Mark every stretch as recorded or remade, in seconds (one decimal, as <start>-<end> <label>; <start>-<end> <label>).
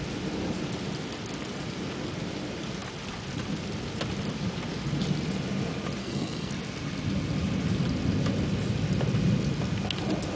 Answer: 0.0-6.0 recorded; 6.0-6.5 remade; 6.5-10.4 recorded